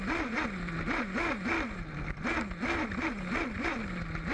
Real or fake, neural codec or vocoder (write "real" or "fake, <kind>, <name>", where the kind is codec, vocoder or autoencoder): real